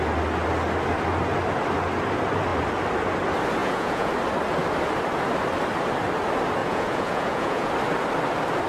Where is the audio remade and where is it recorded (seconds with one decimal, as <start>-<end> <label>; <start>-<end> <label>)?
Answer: 0.0-3.6 recorded; 3.6-4.1 remade; 4.1-6.6 recorded; 6.6-7.7 remade; 7.7-8.7 recorded